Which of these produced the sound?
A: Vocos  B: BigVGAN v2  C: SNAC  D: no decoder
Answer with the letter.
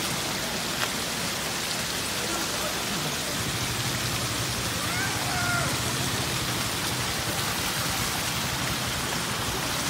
D